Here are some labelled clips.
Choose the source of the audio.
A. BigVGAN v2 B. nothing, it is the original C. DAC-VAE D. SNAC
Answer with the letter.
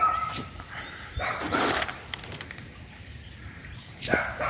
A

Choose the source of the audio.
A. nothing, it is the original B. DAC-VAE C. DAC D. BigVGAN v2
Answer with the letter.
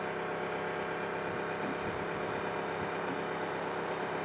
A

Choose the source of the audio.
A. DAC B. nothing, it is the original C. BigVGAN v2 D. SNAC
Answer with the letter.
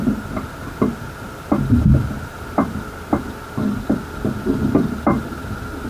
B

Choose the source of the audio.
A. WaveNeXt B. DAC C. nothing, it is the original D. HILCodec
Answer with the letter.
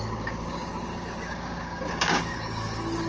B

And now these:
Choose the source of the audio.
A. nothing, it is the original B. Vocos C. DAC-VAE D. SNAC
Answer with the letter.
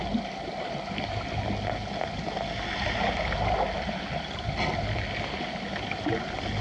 A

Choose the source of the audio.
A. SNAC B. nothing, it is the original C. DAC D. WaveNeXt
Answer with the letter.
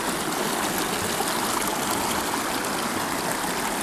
B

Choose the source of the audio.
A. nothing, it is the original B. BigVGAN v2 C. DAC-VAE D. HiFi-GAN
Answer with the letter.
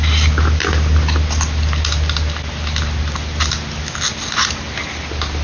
A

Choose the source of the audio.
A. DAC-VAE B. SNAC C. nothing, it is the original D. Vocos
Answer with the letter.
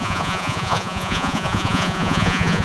D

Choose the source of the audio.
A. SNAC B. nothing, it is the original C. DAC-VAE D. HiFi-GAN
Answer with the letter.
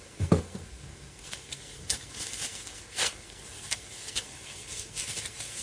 A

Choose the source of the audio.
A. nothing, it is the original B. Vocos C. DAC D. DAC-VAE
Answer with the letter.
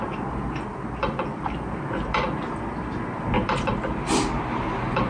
A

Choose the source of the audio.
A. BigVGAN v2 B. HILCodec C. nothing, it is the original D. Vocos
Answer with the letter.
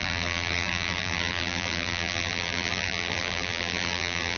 A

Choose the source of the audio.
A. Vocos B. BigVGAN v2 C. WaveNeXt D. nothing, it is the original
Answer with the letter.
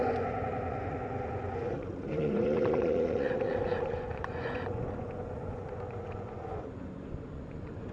A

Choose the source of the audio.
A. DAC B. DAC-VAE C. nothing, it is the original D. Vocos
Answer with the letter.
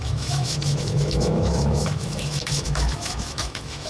B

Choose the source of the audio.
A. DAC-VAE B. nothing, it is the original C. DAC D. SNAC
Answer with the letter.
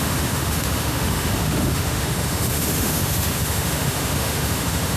A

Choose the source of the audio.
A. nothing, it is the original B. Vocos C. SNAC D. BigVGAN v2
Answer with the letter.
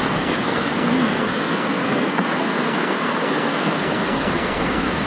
C